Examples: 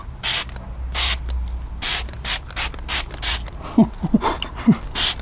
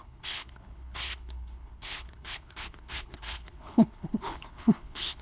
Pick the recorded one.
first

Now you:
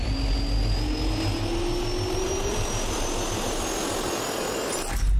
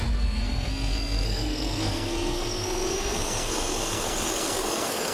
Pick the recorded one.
first